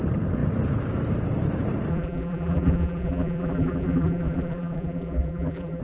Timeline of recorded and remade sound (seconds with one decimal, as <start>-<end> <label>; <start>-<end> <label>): 0.0-1.9 recorded; 1.9-5.8 remade